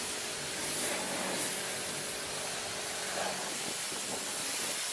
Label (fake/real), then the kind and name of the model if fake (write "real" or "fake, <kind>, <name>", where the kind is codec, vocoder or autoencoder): real